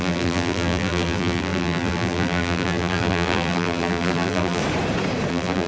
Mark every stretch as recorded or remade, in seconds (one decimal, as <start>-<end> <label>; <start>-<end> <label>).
0.0-4.6 remade; 4.6-5.3 recorded; 5.3-5.7 remade